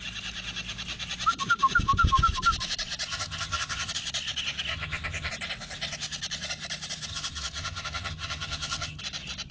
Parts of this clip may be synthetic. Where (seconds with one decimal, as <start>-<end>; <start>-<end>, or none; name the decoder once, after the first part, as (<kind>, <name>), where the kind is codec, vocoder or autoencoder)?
3.1-3.9 (vocoder, HiFi-GAN); 4.7-5.3; 7.1-9.0